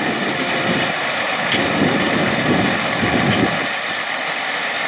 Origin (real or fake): real